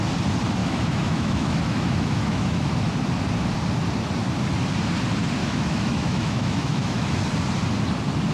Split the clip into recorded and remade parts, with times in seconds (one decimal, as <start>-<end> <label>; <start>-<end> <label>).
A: 0.0-0.6 recorded; 0.6-2.7 remade; 2.7-5.4 recorded; 5.4-7.2 remade; 7.2-8.3 recorded